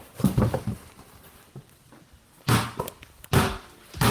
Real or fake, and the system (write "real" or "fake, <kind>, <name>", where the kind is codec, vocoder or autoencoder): real